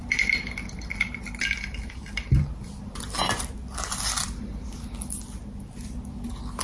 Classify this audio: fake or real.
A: real